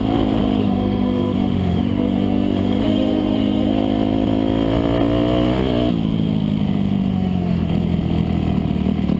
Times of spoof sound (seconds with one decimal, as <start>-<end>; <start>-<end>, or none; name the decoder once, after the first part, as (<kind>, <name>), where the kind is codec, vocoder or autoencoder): 0.6-3.7 (autoencoder, DAC-VAE); 7.1-7.7